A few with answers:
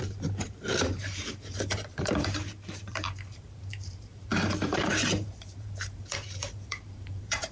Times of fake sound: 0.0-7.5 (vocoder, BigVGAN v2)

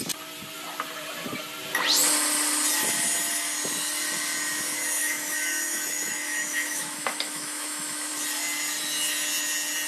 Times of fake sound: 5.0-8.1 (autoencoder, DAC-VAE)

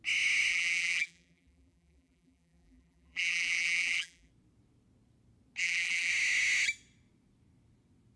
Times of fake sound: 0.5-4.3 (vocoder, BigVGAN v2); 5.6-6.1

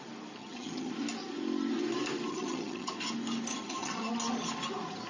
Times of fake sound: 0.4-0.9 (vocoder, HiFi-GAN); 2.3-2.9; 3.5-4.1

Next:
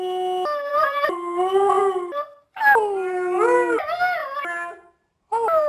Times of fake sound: 0.7-1.8 (vocoder, BigVGAN v2); 4.2-5.7